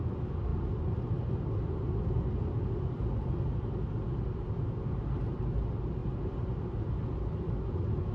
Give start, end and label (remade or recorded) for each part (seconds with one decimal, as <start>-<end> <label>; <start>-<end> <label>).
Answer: 0.0-8.1 recorded